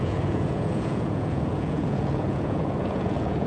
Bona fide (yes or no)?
no